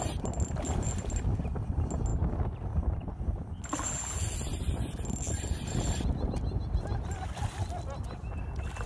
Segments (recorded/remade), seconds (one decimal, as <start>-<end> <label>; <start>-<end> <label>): 0.0-8.9 recorded